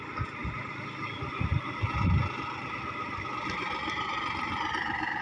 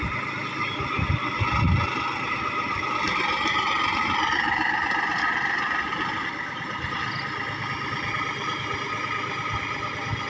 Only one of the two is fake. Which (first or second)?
first